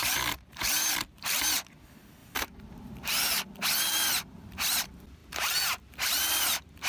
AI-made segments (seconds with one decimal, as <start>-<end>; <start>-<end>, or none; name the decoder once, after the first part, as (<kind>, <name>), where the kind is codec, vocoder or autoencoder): 0.0-1.4 (vocoder, BigVGAN v2); 2.2-3.1

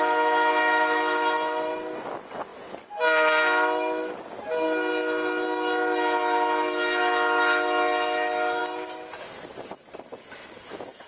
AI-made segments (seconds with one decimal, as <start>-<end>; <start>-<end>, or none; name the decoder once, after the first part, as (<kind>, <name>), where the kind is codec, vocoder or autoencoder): none